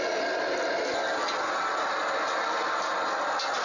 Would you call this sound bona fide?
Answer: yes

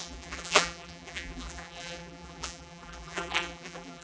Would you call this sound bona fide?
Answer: no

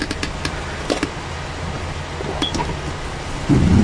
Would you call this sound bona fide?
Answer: yes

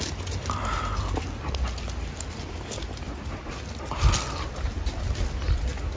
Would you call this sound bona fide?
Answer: yes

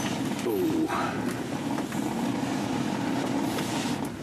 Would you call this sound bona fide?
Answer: yes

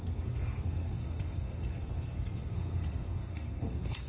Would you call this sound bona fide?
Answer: no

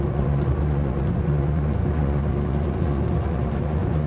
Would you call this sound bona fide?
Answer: no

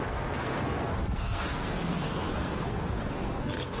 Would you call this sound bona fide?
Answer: no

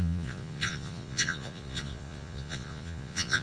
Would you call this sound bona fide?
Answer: no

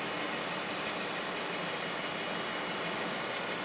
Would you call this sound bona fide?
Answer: yes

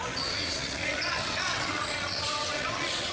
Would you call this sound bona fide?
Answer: no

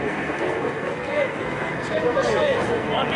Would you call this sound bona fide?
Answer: no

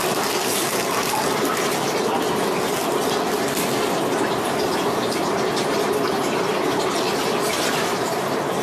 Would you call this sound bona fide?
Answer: yes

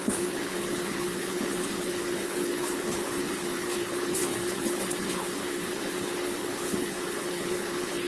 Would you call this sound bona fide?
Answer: no